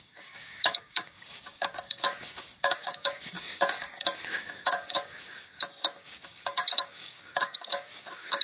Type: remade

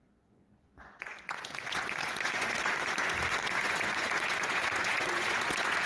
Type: remade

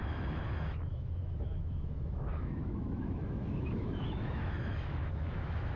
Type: remade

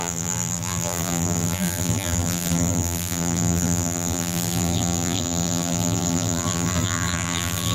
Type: remade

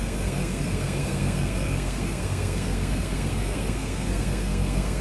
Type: remade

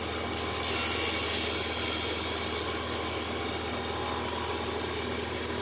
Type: recorded